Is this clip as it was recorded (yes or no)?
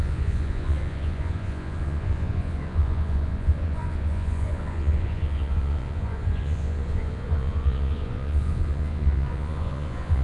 no